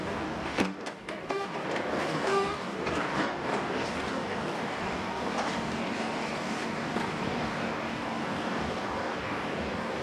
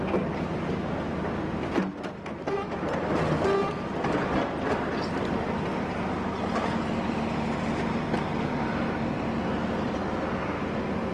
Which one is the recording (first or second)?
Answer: second